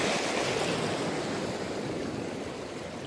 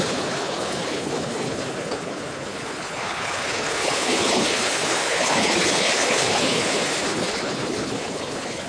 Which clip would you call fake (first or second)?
second